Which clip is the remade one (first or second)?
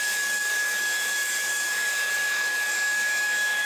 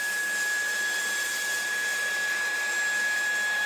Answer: first